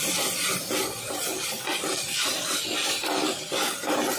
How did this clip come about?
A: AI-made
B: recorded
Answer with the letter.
B